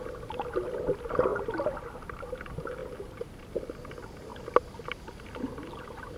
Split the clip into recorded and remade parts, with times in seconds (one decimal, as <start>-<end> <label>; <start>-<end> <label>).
0.0-4.3 recorded; 4.3-5.0 remade; 5.0-6.2 recorded